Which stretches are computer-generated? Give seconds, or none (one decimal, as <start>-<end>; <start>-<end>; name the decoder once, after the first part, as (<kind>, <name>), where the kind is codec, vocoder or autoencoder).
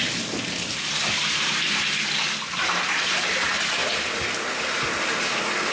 none